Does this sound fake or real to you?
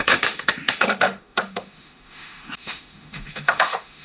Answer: fake